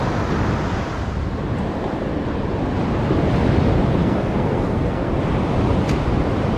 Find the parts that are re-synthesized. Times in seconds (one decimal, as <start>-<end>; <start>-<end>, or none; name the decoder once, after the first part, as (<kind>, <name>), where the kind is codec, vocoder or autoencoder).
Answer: 4.0-5.1 (codec, SNAC)